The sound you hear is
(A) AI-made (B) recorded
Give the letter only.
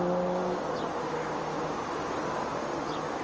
B